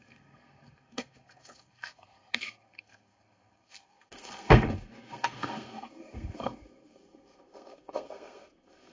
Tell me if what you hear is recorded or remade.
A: remade